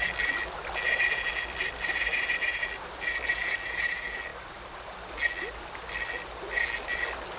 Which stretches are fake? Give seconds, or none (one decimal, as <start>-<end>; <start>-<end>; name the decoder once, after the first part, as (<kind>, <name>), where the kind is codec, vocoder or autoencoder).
none